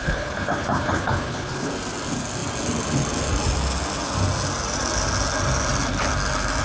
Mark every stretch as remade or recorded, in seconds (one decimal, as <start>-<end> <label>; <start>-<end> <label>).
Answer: 0.0-1.7 remade; 1.7-6.6 recorded